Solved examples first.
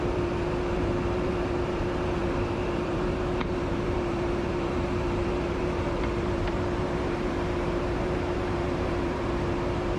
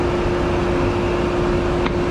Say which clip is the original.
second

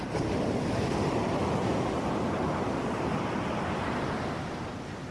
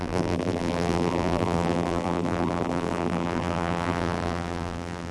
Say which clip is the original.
first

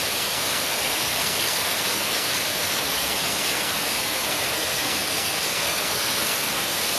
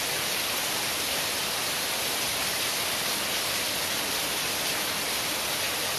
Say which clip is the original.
second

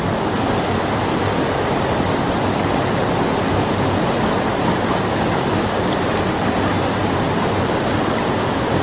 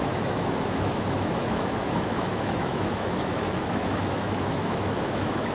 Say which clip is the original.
first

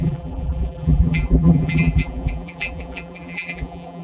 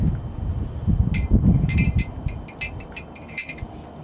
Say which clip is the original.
second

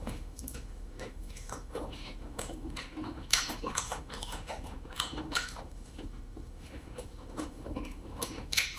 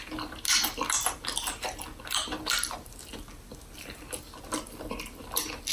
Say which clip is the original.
second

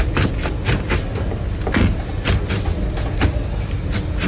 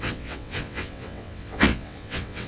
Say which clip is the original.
first